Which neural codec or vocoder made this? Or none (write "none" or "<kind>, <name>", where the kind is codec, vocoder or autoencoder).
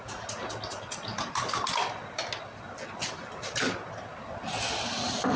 none